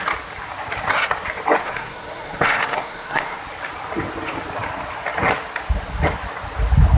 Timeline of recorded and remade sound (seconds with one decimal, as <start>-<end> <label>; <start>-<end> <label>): 0.0-1.6 recorded; 1.6-3.4 remade; 3.4-7.0 recorded